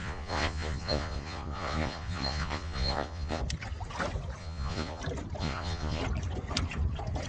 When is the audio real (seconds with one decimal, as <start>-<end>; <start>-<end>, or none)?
3.4-4.4; 5.0-5.4; 6.0-7.3